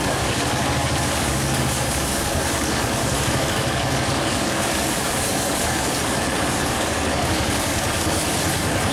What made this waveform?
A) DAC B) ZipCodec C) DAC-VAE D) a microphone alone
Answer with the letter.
A